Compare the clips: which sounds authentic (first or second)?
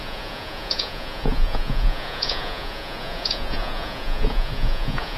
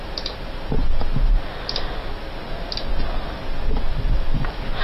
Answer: second